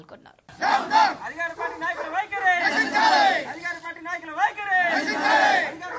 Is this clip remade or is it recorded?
recorded